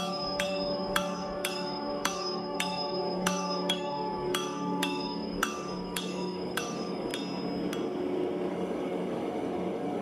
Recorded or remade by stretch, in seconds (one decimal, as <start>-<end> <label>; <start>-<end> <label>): 0.0-7.1 remade; 7.1-8.5 recorded; 8.5-10.0 remade